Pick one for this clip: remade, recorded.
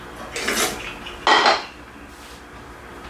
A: recorded